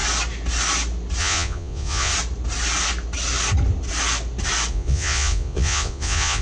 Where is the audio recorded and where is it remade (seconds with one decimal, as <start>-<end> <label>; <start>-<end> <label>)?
0.0-1.2 recorded; 1.2-2.1 remade; 2.1-4.7 recorded; 4.7-6.4 remade